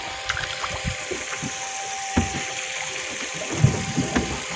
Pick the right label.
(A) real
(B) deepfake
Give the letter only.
A